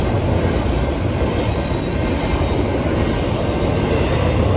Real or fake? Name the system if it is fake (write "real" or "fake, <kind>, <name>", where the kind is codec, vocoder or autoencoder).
real